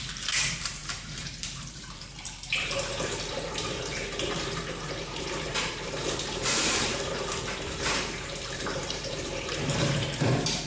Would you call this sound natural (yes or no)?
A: no